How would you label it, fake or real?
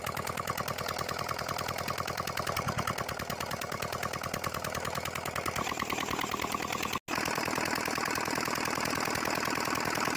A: real